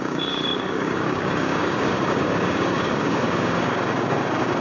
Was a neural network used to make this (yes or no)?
yes